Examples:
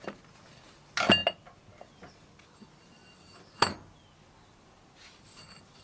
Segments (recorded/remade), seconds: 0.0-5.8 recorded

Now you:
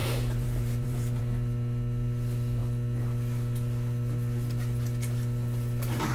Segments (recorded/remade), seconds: 0.0-1.2 remade; 1.2-6.1 recorded

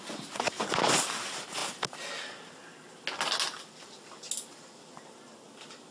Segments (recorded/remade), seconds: 0.0-5.9 recorded

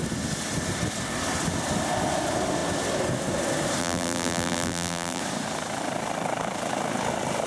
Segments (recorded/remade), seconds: 0.0-3.8 recorded; 3.8-5.2 remade; 5.2-7.5 recorded